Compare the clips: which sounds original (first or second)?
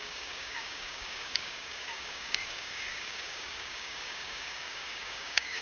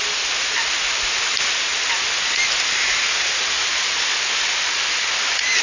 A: second